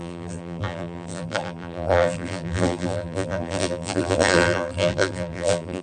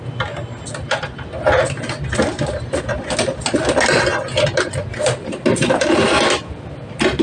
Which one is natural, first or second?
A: second